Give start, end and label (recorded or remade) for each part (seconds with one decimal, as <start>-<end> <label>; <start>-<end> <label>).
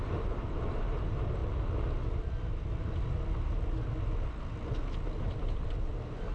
0.0-1.4 remade; 1.4-5.2 recorded; 5.2-6.3 remade